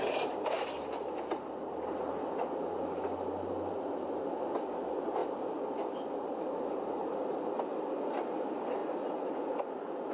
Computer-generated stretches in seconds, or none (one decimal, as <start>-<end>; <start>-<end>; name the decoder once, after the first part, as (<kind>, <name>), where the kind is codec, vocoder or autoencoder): none